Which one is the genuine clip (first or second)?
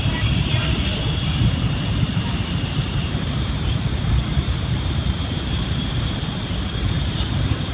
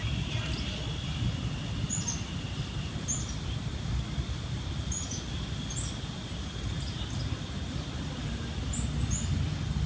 second